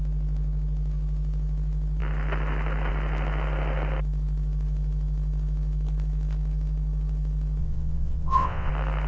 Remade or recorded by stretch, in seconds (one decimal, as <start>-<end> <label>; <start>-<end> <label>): 0.0-7.6 recorded; 7.6-8.7 remade; 8.7-9.1 recorded